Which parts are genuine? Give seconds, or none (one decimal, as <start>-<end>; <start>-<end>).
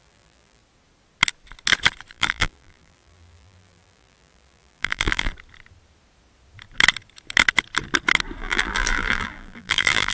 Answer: 0.6-2.1; 5.3-8.4